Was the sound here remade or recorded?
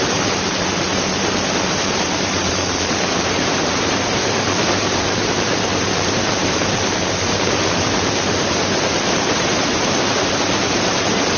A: remade